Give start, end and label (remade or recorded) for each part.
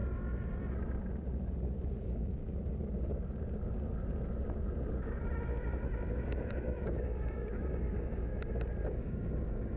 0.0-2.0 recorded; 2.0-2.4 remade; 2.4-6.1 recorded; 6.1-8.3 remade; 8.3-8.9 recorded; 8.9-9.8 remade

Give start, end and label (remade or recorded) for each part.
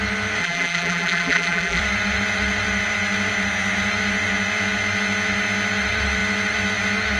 0.0-0.4 recorded; 0.4-1.8 remade; 1.8-7.2 recorded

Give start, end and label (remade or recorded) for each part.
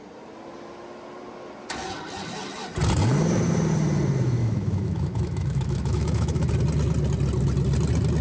0.0-4.4 recorded; 4.4-6.5 remade; 6.5-8.2 recorded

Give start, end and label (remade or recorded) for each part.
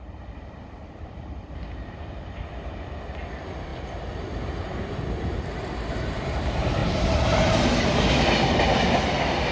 0.0-9.5 recorded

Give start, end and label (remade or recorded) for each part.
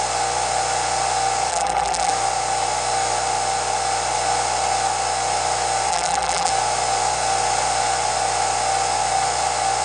0.0-1.5 recorded; 1.5-2.1 remade; 2.1-5.9 recorded; 5.9-6.5 remade; 6.5-9.8 recorded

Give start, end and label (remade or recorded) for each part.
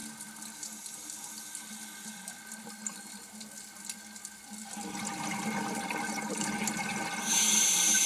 0.0-8.1 recorded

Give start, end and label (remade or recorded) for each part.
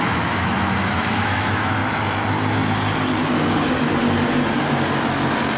0.0-1.8 remade; 1.8-5.6 recorded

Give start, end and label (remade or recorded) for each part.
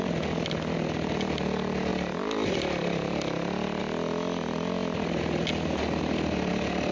0.0-6.9 recorded